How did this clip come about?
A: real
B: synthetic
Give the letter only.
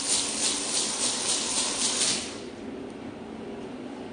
A